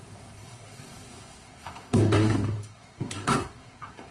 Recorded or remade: remade